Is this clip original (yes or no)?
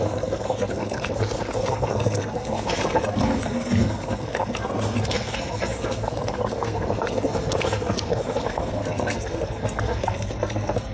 no